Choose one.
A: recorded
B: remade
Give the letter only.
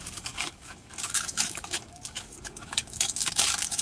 B